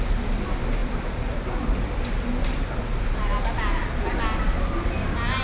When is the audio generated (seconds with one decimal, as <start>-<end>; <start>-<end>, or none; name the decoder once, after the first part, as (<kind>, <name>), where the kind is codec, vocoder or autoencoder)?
none